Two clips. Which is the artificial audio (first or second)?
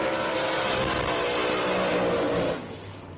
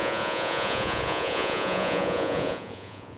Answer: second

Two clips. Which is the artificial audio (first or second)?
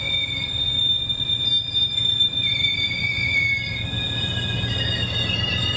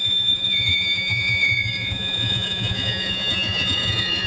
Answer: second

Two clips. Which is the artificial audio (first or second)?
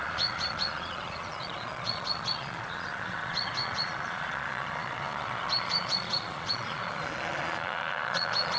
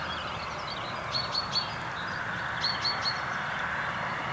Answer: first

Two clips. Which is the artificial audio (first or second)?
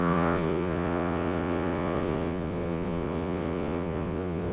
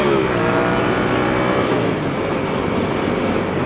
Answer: first